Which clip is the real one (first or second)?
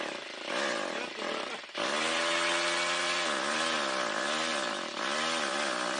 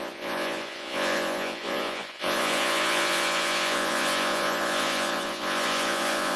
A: first